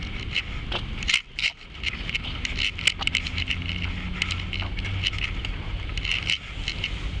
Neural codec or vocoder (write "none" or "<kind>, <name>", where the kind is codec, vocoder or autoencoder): none